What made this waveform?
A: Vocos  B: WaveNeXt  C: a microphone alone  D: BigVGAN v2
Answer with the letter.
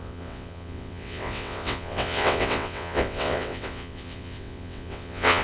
B